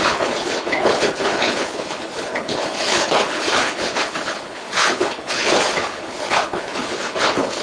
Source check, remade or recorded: remade